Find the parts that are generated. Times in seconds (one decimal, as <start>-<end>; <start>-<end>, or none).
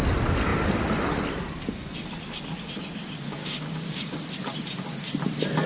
3.4-4.2